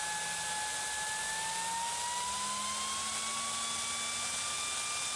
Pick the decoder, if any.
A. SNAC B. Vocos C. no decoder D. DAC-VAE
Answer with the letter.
C